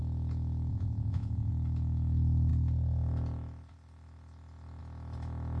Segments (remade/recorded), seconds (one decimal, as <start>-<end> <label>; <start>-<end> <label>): 0.0-0.7 recorded; 0.7-1.5 remade; 1.5-5.6 recorded